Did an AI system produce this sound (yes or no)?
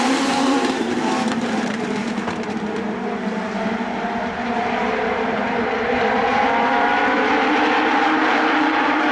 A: yes